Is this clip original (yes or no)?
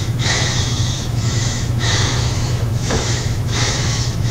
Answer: no